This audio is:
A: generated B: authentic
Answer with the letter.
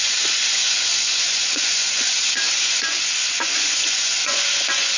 A